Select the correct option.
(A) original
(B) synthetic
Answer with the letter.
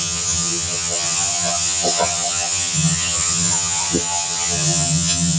B